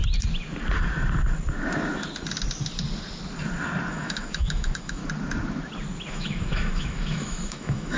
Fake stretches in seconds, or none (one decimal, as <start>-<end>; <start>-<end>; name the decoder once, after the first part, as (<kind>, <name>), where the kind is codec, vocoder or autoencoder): 3.9-5.0 (autoencoder, DAC-VAE); 6.1-8.0